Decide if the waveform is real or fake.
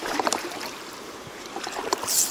fake